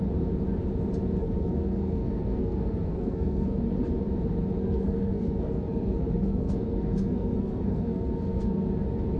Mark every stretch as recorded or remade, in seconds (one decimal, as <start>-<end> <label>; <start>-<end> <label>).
0.0-1.2 recorded; 1.2-3.6 remade; 3.6-4.6 recorded; 4.6-8.7 remade; 8.7-9.2 recorded